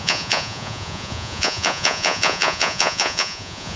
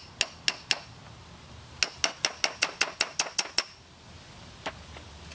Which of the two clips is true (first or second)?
second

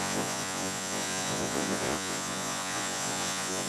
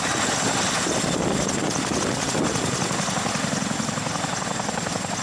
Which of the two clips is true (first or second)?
second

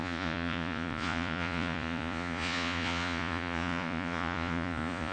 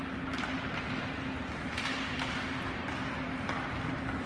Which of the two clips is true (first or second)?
second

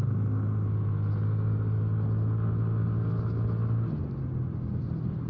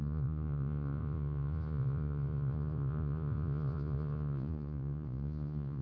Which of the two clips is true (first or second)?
first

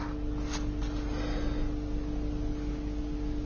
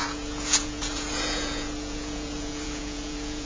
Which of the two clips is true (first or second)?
first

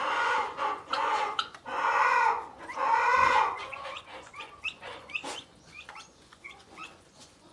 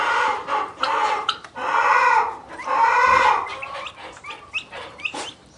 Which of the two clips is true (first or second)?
second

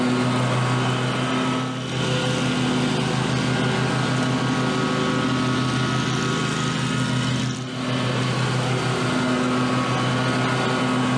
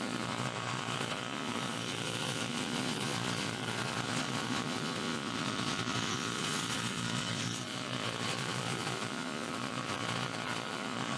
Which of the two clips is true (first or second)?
first